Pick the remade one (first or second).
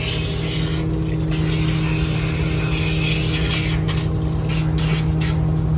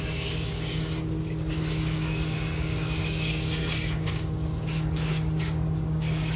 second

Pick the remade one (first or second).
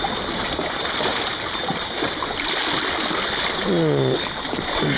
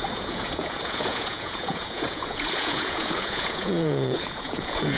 second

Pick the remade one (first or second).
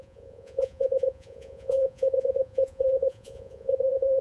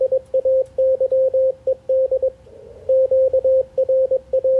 first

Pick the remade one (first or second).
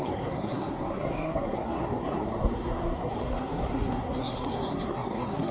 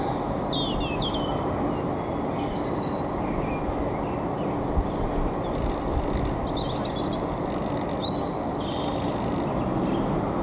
first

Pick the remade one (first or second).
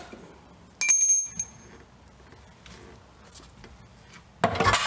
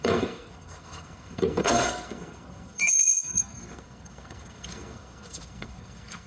second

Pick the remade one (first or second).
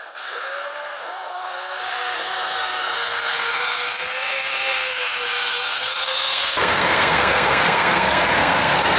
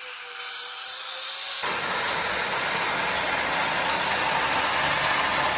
first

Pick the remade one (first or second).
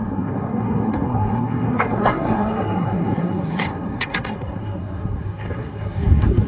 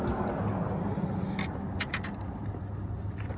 first